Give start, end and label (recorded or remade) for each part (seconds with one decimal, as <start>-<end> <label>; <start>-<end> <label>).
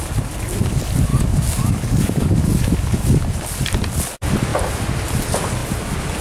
0.0-1.1 recorded; 1.1-3.2 remade; 3.2-6.2 recorded